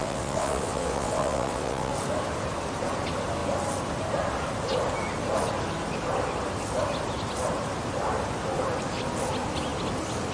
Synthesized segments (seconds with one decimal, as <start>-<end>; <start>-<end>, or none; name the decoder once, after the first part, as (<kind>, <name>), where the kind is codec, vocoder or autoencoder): 0.0-1.9 (vocoder, WaveNeXt)